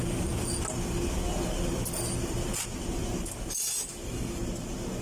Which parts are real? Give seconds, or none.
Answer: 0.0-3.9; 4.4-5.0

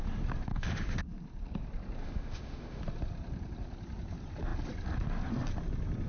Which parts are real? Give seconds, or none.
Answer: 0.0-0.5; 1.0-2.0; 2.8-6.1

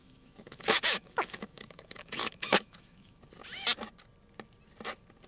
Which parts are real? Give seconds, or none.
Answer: 3.2-5.3

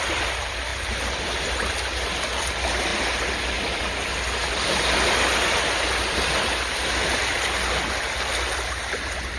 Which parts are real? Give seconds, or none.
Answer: 0.0-9.4